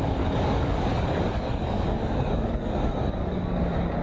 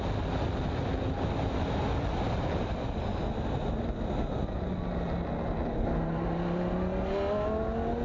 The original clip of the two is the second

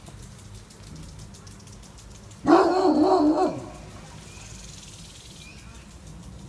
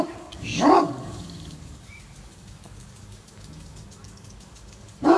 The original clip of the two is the first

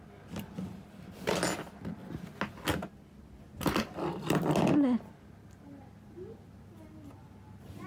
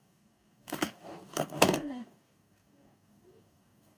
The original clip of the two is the first